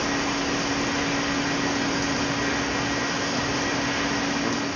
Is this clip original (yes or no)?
yes